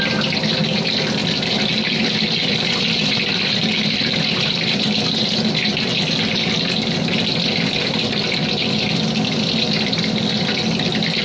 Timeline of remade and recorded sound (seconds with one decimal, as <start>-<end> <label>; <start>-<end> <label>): 0.0-1.2 recorded; 1.2-4.7 remade; 4.7-8.4 recorded; 8.4-9.6 remade; 9.6-11.2 recorded